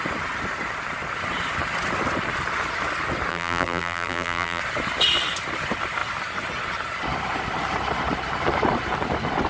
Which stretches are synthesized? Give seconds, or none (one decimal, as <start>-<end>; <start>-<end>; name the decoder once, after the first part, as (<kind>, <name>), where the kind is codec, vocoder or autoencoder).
3.3-4.6 (vocoder, BigVGAN v2)